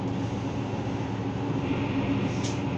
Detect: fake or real real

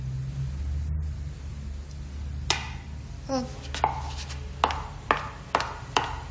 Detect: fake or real real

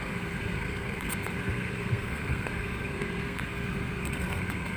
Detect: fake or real fake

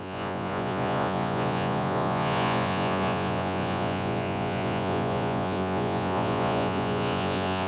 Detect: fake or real fake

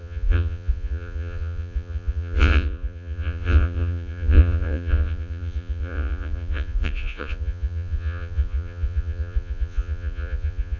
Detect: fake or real fake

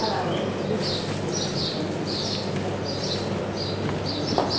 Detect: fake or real real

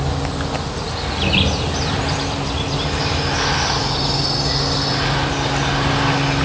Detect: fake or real real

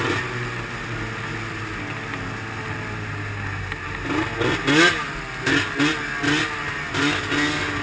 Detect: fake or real real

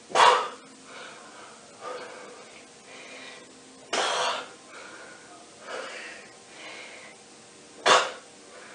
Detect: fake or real real